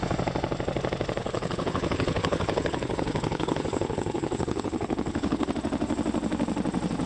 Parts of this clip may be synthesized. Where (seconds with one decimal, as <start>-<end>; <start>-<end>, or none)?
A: 1.2-5.5